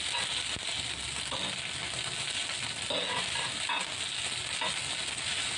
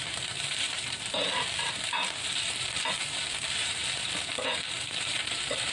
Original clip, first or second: first